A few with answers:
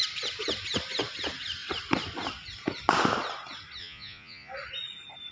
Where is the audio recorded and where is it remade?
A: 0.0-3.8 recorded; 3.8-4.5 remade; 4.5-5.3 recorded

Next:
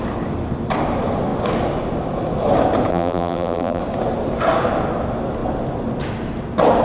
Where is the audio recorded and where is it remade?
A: 0.0-2.9 recorded; 2.9-3.8 remade; 3.8-6.8 recorded

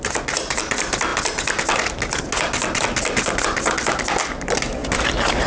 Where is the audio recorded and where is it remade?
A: 0.0-5.5 recorded

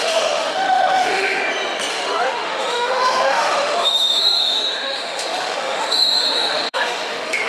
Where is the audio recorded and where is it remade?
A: 0.0-1.4 remade; 1.4-1.9 recorded; 1.9-7.5 remade